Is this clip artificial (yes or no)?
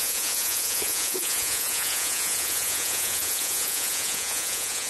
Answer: yes